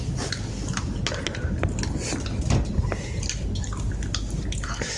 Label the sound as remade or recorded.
recorded